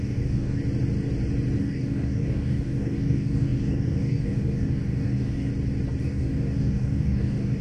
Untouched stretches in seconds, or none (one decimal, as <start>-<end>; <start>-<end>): 0.6-1.6; 5.5-6.0